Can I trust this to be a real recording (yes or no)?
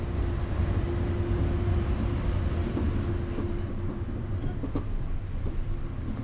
yes